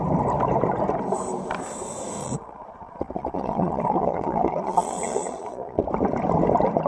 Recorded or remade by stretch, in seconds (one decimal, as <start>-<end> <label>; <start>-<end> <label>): 0.0-2.2 recorded; 2.2-5.8 remade; 5.8-6.9 recorded